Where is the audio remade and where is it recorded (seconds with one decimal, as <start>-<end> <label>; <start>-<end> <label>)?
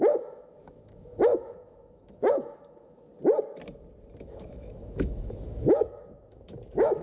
0.0-3.1 remade; 3.1-4.2 recorded; 4.2-7.0 remade